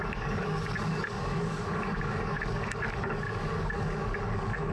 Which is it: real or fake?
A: fake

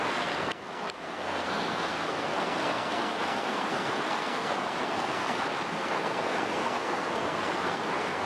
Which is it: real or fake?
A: fake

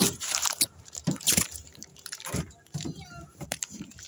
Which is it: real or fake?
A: fake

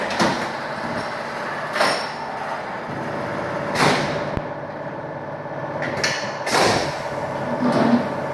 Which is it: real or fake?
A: real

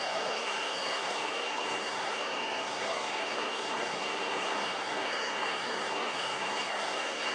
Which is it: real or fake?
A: fake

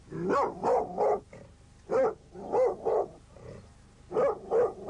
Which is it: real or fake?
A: real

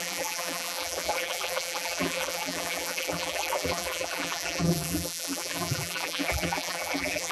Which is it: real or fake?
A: fake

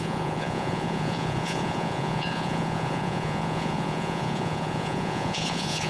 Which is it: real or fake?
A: fake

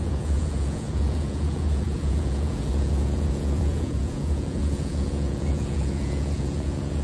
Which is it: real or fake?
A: fake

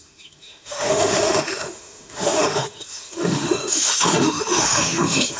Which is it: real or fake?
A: fake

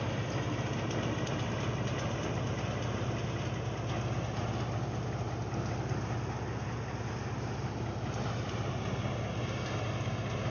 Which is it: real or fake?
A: real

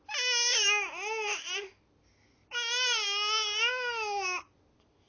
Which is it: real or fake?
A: real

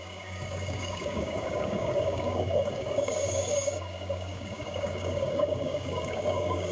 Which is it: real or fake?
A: fake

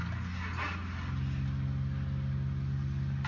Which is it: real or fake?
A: real